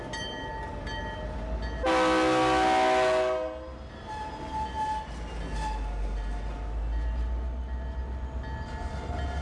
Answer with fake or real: real